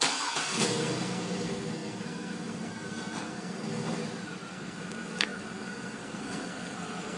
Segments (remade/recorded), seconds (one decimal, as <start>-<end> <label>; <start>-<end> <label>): 0.0-4.0 remade; 4.0-4.5 recorded; 4.5-7.2 remade